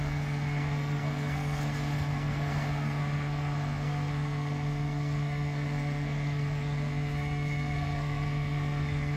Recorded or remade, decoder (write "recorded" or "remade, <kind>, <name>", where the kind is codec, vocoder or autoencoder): remade, codec, SNAC